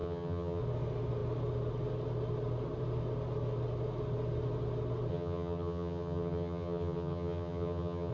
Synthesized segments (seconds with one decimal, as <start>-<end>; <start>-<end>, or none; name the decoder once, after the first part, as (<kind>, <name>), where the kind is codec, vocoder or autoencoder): 0.0-0.6 (vocoder, HiFi-GAN); 5.1-8.1